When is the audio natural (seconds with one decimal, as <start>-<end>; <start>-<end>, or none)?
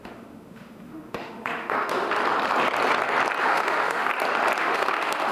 2.2-3.4; 4.1-4.6